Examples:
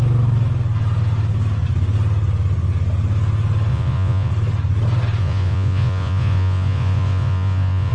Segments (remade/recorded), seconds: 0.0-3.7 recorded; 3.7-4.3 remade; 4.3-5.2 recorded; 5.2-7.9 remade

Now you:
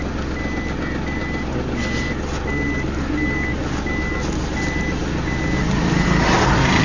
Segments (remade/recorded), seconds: 0.0-6.8 recorded

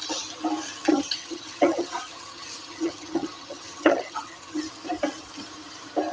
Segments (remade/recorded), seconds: 0.0-0.9 recorded; 0.9-4.6 remade; 4.6-6.1 recorded

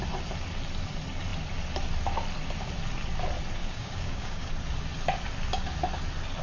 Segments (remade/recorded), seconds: 0.0-3.6 recorded; 3.6-4.5 remade; 4.5-6.4 recorded